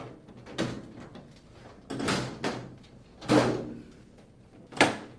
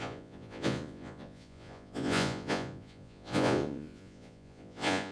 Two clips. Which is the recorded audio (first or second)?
first